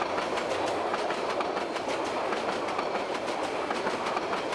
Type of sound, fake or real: real